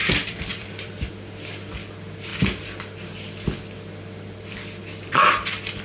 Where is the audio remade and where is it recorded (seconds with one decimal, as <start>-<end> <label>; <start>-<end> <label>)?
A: 0.0-1.1 remade; 1.1-5.8 recorded